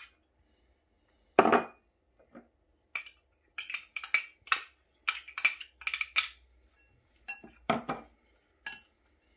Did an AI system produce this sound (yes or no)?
no